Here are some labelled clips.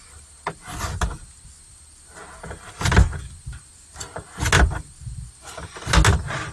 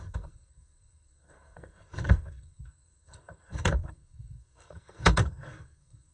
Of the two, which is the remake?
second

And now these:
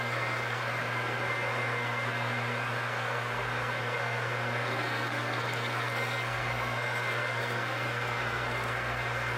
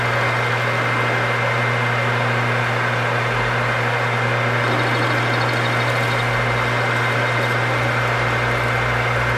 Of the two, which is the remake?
first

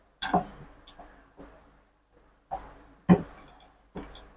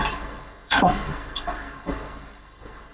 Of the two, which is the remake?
second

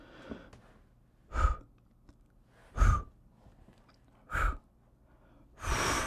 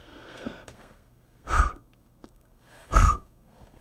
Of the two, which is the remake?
second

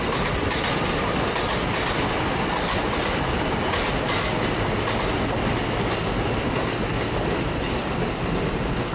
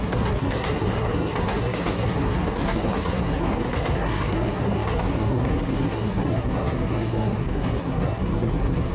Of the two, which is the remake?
second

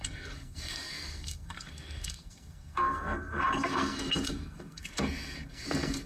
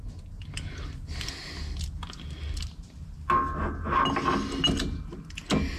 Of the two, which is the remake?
first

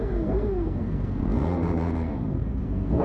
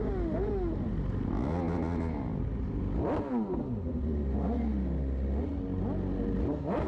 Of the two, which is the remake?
first